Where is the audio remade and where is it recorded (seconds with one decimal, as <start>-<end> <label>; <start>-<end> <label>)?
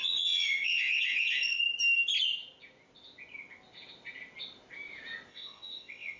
0.0-1.6 remade; 1.6-5.3 recorded; 5.3-6.2 remade